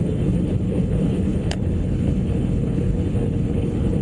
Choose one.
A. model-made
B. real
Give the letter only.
A